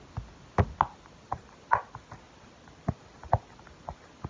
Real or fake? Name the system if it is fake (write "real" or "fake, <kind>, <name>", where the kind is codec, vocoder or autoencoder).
real